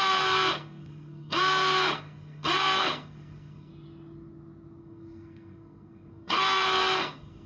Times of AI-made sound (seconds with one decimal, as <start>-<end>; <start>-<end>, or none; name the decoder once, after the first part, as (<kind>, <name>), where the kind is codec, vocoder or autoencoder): 0.0-3.7 (codec, SNAC); 4.8-7.5